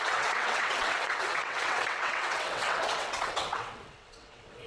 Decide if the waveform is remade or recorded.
remade